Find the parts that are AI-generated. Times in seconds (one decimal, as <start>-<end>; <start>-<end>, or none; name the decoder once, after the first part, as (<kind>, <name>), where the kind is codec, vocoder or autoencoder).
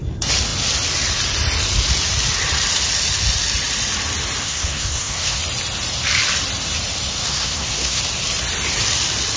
4.4-5.4 (codec, SNAC); 7.3-8.0